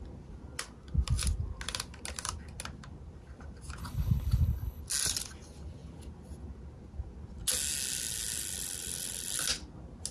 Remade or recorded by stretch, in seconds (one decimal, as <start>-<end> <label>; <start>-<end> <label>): 0.0-3.8 recorded; 3.8-4.8 remade; 4.8-10.1 recorded